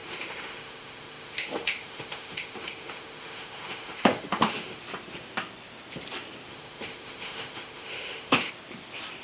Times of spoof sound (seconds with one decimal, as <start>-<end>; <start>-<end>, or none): 0.0-4.8; 6.5-8.5